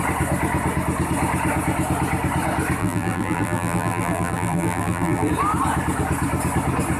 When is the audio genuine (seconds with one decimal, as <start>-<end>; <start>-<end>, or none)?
0.0-2.8; 5.3-7.0